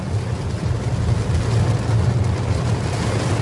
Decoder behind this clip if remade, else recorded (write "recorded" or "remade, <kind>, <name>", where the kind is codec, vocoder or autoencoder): recorded